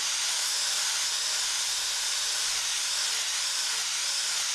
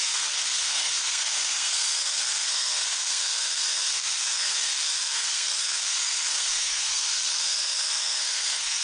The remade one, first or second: second